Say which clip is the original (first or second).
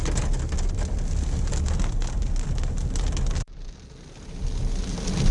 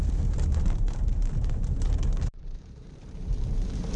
first